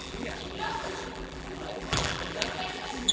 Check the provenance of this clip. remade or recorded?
remade